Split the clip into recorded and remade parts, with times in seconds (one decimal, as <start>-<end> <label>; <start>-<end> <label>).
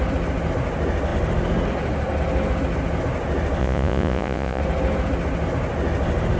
0.0-3.6 recorded; 3.6-4.6 remade; 4.6-6.4 recorded